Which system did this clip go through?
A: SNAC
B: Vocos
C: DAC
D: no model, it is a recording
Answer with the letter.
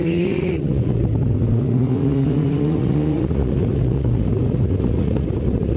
B